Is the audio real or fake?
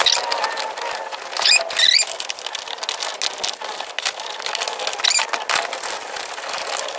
real